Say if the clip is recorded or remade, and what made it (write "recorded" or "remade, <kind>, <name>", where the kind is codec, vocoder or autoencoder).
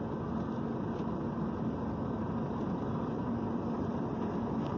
recorded